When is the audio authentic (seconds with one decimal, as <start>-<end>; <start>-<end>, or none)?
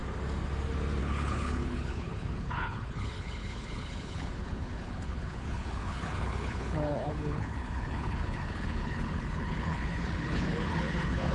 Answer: 0.0-1.0